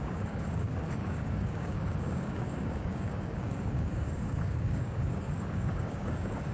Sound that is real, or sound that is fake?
fake